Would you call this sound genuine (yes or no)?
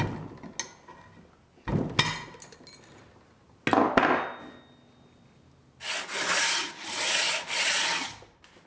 yes